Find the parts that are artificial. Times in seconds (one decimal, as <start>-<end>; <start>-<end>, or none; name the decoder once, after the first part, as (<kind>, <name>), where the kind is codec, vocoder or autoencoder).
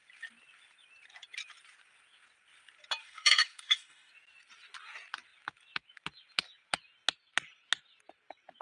3.0-4.1 (autoencoder, DAC-VAE)